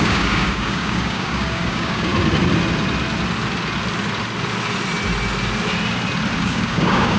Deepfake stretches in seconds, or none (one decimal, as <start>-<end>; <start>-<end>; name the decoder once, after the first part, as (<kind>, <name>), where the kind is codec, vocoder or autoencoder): 0.0-2.1 (codec, DAC); 6.4-7.2